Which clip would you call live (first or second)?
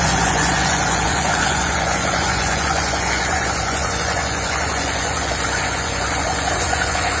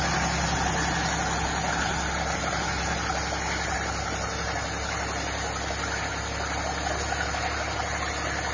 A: second